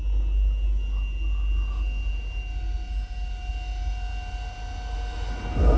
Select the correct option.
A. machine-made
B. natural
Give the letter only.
B